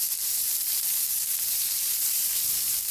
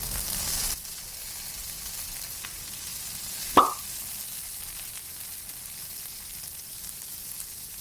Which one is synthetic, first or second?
first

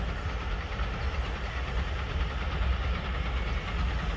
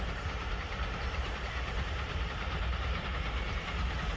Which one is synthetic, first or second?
second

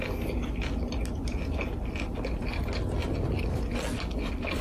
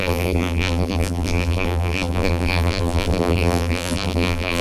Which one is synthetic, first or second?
second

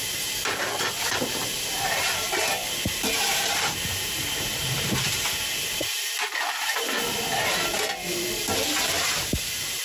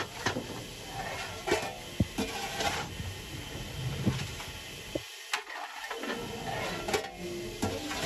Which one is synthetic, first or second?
first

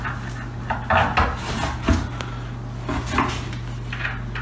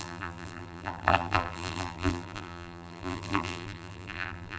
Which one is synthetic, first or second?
second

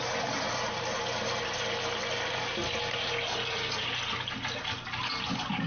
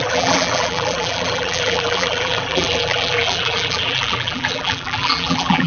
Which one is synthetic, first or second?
second